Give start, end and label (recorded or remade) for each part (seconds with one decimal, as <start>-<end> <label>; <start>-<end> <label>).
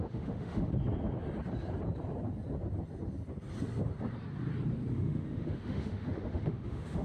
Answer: 0.0-0.7 remade; 0.7-4.9 recorded; 4.9-7.0 remade